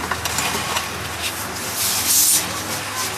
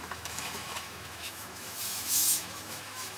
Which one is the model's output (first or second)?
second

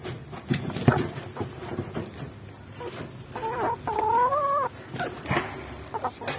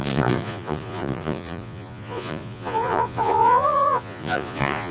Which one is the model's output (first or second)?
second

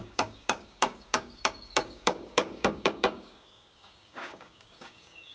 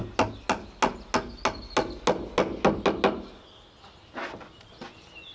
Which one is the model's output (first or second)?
first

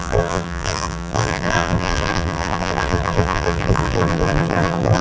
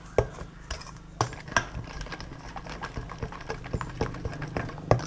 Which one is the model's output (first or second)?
first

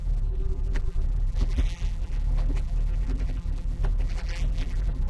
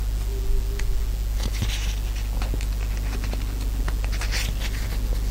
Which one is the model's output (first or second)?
first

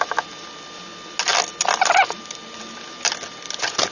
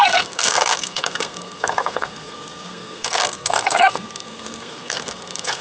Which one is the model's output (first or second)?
second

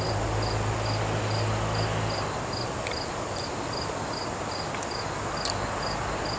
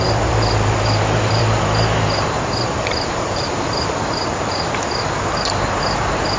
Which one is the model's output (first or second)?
second